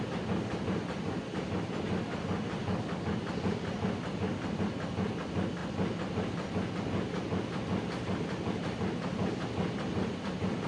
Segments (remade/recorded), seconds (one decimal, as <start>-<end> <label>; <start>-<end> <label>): 0.0-2.6 recorded; 2.6-3.1 remade; 3.1-10.7 recorded